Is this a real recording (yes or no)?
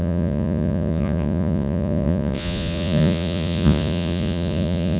no